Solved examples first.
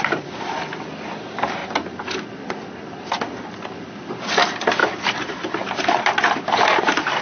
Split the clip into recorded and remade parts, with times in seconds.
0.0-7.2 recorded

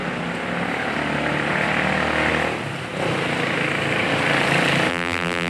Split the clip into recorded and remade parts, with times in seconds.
0.0-4.9 recorded; 4.9-5.5 remade

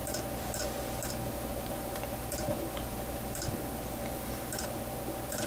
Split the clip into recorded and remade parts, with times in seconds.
0.0-1.1 remade; 1.1-1.5 recorded; 1.5-4.8 remade; 4.8-5.5 recorded

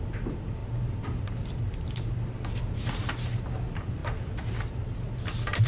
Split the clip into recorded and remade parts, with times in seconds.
0.0-0.6 recorded; 0.6-1.9 remade; 1.9-4.0 recorded; 4.0-4.9 remade; 4.9-5.7 recorded

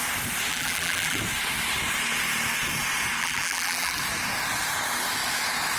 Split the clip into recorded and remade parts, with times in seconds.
0.0-0.5 recorded; 0.5-1.2 remade; 1.2-3.2 recorded; 3.2-4.0 remade; 4.0-5.8 recorded

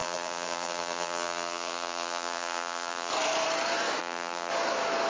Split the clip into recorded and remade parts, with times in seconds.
0.0-3.1 remade; 3.1-4.0 recorded; 4.0-4.5 remade; 4.5-5.1 recorded

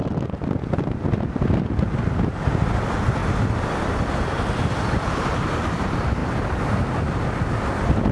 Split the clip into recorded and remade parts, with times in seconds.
0.0-8.1 recorded